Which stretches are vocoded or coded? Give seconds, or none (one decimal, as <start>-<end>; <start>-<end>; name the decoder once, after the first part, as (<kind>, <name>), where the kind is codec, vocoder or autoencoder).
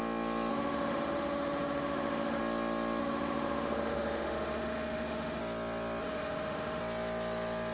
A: 0.5-2.4 (autoencoder, DAC-VAE); 3.0-5.4; 6.0-6.8